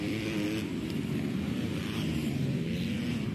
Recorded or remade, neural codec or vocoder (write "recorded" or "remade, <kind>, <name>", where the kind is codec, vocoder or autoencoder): remade, vocoder, BigVGAN v2